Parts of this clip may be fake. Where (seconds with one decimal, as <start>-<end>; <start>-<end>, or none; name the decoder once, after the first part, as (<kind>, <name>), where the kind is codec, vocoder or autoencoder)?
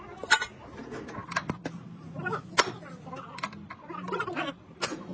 none